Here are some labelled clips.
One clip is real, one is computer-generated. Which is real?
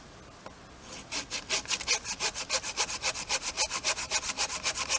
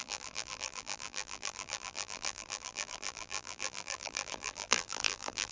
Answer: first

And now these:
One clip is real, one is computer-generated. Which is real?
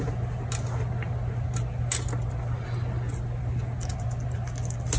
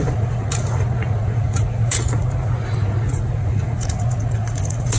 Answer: first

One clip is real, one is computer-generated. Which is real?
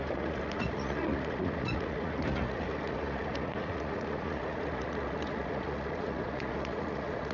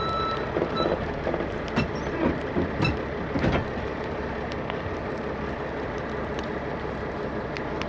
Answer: second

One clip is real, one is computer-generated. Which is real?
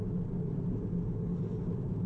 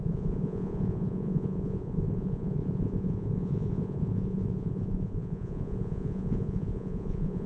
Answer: first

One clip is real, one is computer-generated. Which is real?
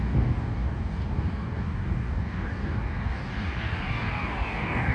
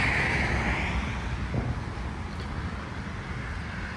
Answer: second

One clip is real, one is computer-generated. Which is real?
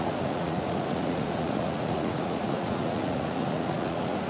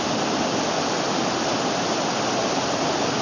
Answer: second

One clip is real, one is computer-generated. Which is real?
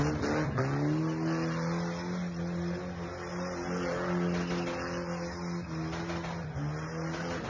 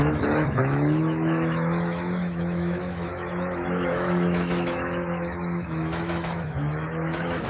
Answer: first